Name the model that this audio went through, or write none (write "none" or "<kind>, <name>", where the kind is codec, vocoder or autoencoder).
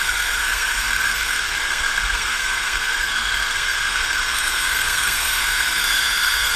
codec, SNAC